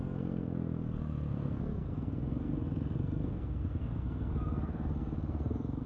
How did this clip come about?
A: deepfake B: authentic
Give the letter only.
A